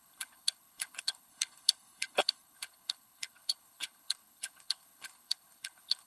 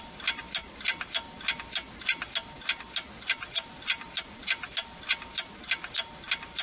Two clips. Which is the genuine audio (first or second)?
second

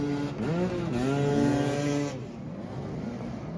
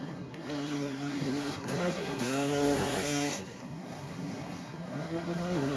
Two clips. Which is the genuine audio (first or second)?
first